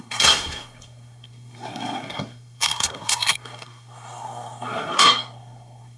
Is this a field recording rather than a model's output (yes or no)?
no